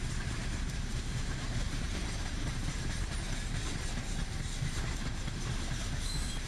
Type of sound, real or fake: fake